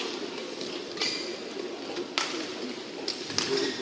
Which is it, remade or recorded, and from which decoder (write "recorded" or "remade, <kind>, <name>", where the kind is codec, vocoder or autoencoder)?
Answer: recorded